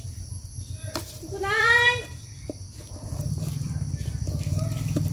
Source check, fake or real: fake